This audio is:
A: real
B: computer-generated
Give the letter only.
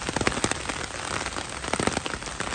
A